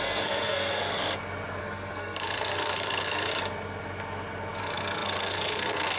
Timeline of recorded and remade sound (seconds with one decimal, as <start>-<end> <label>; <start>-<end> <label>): 0.0-0.8 remade; 0.8-1.6 recorded; 1.6-3.3 remade; 3.3-4.6 recorded; 4.6-6.0 remade